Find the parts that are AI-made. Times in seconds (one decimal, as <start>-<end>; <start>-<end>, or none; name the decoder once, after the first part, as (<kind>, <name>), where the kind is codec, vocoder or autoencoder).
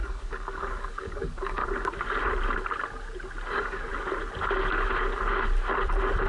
0.0-1.6 (codec, DAC); 3.5-3.9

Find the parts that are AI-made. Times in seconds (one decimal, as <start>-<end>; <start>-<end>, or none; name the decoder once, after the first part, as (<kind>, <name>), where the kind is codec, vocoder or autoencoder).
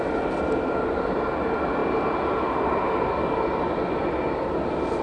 none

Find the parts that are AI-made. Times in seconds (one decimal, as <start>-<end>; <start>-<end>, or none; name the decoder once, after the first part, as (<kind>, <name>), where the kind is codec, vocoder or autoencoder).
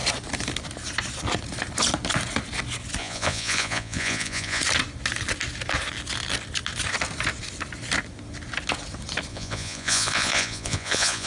3.0-4.6 (vocoder, Vocos); 9.3-11.3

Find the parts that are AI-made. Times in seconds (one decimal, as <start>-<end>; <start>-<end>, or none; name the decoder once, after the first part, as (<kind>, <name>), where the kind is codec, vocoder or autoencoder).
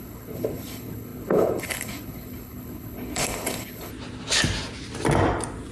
0.0-3.9 (codec, HILCodec)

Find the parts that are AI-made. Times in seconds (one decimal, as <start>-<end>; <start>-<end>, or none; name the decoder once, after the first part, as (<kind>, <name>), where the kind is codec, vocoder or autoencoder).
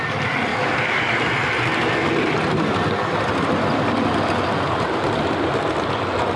0.5-1.2 (codec, DAC)